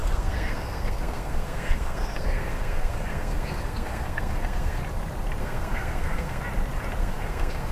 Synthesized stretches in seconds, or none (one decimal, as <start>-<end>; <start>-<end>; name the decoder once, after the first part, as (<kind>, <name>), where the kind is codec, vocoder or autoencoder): 0.0-4.8 (codec, SNAC); 5.4-6.4; 7.0-7.7